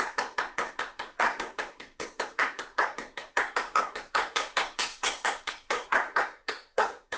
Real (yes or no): no